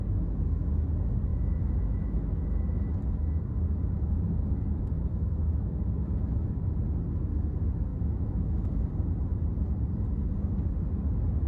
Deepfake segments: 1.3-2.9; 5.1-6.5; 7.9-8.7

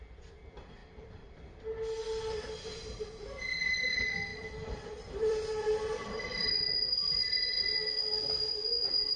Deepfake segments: 0.8-1.6; 4.3-6.5; 7.0-7.6

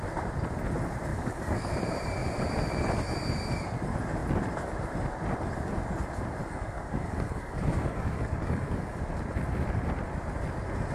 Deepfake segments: 1.1-1.7; 6.4-9.0

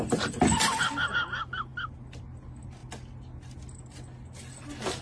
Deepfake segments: none

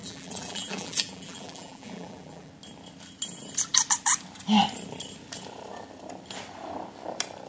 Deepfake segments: 0.0-2.5

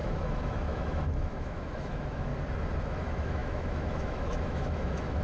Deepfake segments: 0.0-2.3; 2.8-5.2